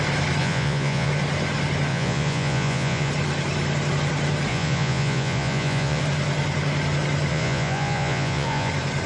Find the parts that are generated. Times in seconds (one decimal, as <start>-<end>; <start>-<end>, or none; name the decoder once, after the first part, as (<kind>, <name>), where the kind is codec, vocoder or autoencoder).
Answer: 0.4-1.1 (vocoder, Vocos); 1.9-3.1; 4.5-6.0; 7.3-8.7

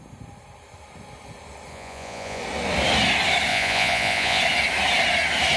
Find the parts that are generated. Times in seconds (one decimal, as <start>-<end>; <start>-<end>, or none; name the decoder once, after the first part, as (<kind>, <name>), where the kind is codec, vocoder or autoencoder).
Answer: 1.7-2.4 (vocoder, Vocos); 3.5-4.4

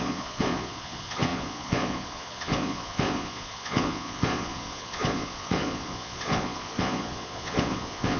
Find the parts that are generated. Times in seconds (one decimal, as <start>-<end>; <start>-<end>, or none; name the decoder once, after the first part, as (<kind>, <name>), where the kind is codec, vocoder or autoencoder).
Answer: 0.0-8.2 (vocoder, Vocos)

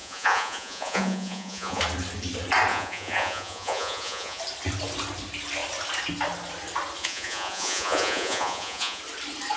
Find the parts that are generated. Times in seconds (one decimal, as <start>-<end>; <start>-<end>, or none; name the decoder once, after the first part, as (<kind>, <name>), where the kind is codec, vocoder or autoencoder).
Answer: 0.0-1.8 (vocoder, Vocos); 2.7-4.4; 7.0-9.0

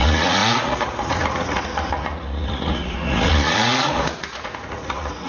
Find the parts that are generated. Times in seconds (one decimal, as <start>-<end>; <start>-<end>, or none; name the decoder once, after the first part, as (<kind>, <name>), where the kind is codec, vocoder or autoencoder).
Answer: 0.0-5.3 (vocoder, Vocos)

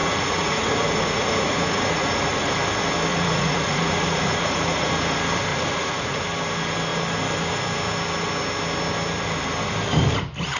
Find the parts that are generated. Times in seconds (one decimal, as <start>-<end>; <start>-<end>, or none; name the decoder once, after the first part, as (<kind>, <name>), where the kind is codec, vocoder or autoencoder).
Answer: 0.0-2.5 (vocoder, Vocos); 3.1-4.9; 5.5-6.2

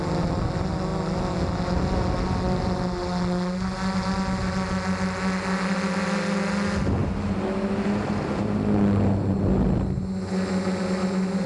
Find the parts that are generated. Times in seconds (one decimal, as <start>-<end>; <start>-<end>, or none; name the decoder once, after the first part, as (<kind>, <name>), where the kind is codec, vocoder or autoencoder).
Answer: none

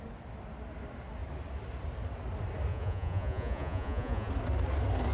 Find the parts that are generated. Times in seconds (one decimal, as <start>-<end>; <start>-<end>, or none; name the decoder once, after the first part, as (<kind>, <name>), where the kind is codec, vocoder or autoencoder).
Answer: 2.7-4.3 (vocoder, Vocos)